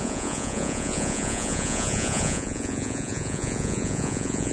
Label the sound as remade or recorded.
remade